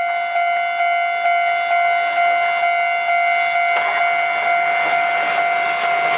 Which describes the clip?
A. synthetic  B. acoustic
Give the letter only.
B